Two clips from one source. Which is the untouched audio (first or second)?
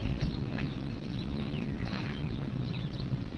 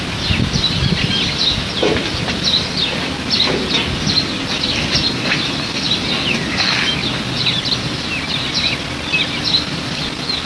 second